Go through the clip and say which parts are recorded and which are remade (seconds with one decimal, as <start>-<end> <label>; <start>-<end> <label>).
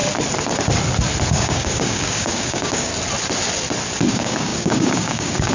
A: 0.0-1.3 recorded; 1.3-2.9 remade; 2.9-4.1 recorded; 4.1-5.5 remade